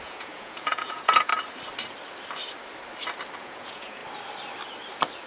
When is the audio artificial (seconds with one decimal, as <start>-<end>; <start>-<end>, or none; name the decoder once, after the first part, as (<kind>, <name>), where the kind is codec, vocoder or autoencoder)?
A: 0.0-1.3 (vocoder, Vocos); 3.4-4.0